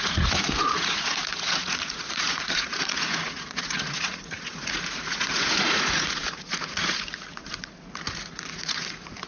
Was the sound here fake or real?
fake